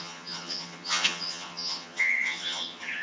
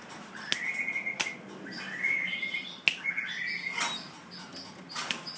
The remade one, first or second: first